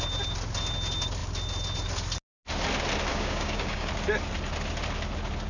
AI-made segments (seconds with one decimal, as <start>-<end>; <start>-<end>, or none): 3.1-3.9